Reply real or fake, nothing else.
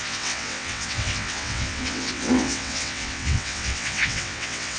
fake